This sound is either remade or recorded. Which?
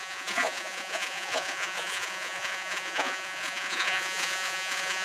remade